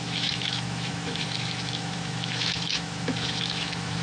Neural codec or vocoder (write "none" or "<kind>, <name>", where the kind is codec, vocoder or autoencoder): autoencoder, DAC-VAE